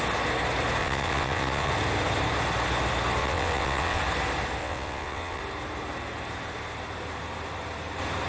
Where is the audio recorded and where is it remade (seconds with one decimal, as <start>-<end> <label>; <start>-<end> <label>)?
0.0-0.8 recorded; 0.8-1.7 remade; 1.7-3.2 recorded; 3.2-4.0 remade; 4.0-4.6 recorded; 4.6-5.4 remade; 5.4-8.3 recorded